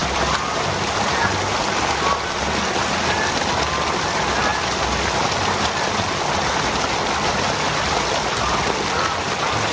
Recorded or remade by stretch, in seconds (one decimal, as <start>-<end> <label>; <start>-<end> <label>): 0.0-1.0 remade; 1.0-9.7 recorded